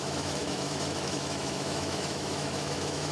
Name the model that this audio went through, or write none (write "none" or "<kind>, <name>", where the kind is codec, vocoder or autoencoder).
autoencoder, DAC-VAE